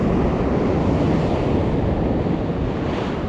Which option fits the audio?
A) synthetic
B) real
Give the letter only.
B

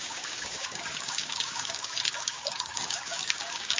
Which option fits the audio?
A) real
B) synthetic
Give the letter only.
B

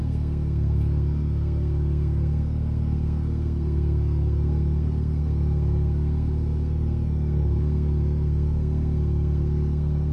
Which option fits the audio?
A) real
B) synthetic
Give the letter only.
B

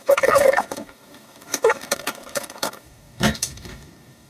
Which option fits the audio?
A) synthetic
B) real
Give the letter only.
A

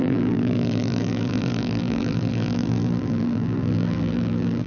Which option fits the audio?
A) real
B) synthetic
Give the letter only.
B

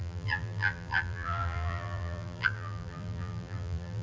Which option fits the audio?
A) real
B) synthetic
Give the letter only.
B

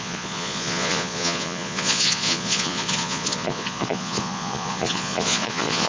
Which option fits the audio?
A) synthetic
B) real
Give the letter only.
A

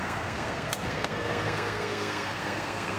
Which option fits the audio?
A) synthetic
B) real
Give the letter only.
A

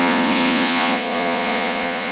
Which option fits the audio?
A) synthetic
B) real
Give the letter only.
A